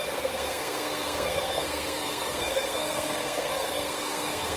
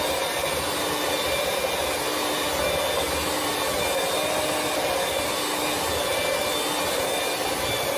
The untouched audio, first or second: second